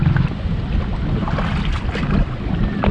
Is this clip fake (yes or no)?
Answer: no